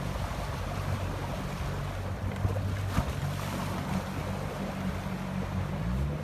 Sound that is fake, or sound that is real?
real